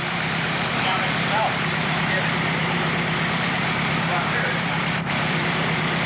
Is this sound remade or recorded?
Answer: remade